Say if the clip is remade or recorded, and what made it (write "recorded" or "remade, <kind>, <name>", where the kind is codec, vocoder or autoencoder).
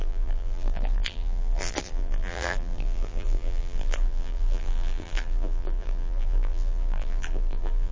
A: remade, vocoder, BigVGAN v2